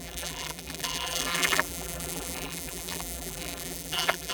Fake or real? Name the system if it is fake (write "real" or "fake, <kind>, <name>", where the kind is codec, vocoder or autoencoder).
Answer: fake, vocoder, BigVGAN v2